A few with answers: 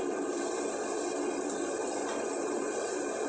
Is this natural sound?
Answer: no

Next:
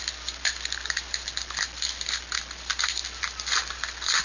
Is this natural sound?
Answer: no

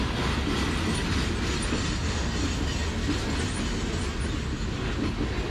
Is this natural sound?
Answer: yes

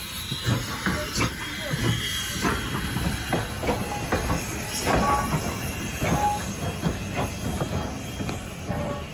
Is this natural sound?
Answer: yes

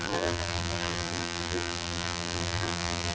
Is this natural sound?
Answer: no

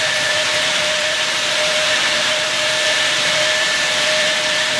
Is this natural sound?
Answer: no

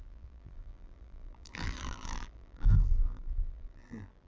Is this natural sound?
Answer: no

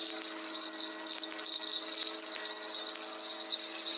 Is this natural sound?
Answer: yes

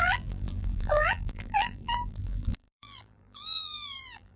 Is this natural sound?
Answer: no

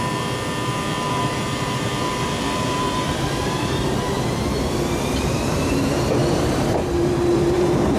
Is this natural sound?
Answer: no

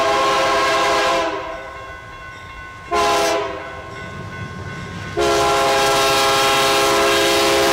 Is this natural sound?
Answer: yes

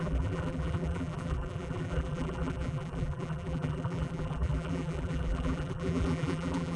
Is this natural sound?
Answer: no